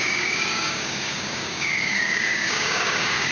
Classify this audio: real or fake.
fake